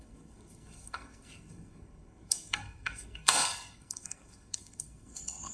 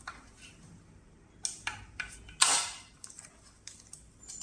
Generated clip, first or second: first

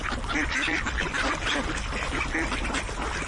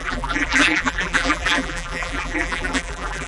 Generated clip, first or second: second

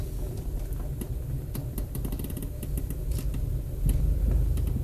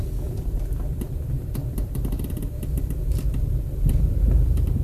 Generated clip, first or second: second